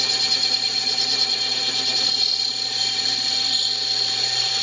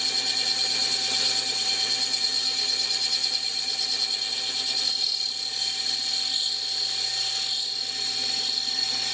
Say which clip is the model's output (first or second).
first